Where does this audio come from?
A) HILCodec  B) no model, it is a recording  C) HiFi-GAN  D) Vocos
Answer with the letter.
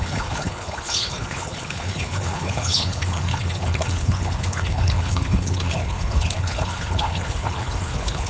A